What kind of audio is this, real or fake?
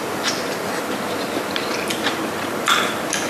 fake